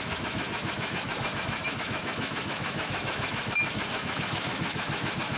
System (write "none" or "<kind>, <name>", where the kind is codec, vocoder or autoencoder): autoencoder, DAC-VAE